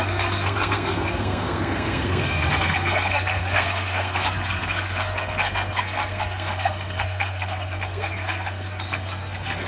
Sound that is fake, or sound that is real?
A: fake